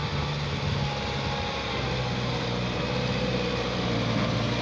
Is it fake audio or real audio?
real